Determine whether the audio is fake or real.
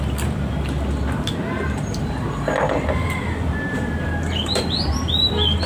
fake